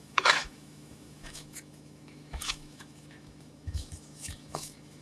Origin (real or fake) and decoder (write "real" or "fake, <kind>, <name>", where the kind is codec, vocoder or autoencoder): fake, autoencoder, DAC-VAE